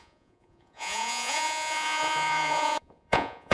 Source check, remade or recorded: remade